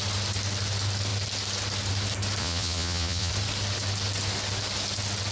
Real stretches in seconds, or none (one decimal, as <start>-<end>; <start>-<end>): 0.0-2.4; 3.3-5.3